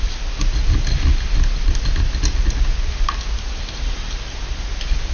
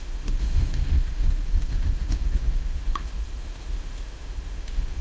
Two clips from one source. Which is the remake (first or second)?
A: second